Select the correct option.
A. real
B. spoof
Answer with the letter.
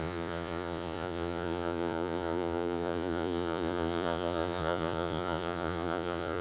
B